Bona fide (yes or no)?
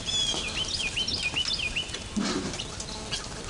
yes